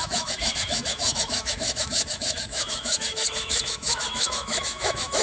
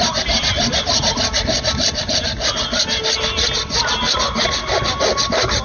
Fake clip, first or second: first